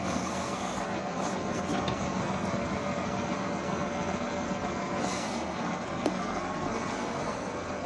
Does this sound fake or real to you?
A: fake